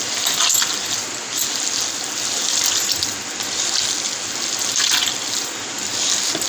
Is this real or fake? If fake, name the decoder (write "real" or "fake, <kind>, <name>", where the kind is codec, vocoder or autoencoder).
real